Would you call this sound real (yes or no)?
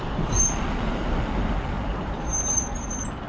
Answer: no